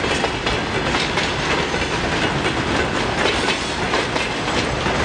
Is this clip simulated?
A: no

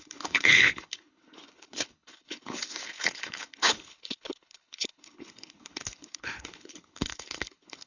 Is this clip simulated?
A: yes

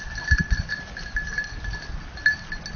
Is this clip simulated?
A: no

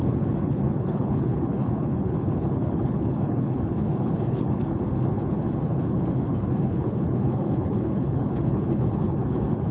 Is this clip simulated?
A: yes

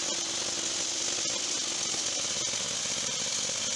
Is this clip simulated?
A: no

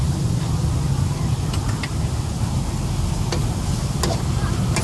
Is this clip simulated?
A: no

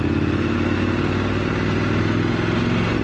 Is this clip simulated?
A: no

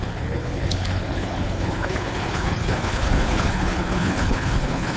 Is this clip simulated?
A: yes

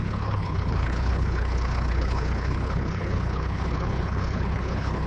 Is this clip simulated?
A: yes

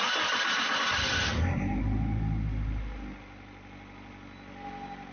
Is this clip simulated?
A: no